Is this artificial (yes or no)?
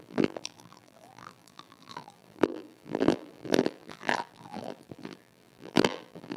yes